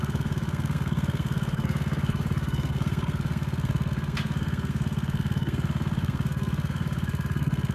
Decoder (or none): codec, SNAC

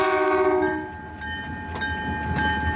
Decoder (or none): none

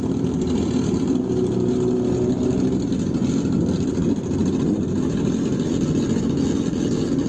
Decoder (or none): none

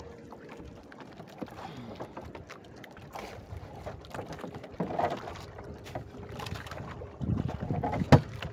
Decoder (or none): none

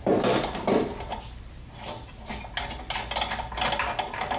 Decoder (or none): none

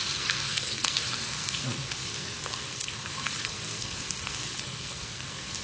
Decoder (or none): codec, SNAC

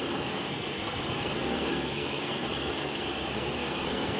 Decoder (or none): codec, SNAC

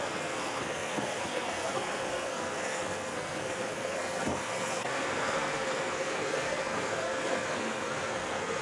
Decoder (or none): codec, SNAC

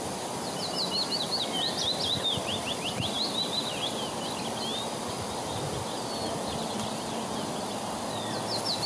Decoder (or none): none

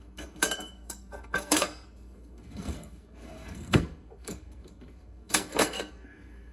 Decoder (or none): codec, SNAC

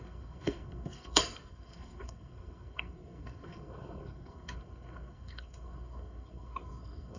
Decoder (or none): codec, SNAC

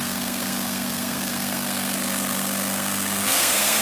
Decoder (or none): codec, SNAC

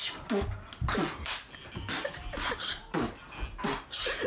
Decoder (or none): none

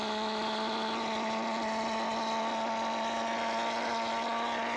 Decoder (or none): none